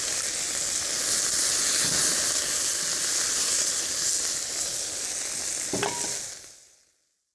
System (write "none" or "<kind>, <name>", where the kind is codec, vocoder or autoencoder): none